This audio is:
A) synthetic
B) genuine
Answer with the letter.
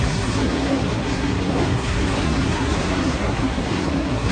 A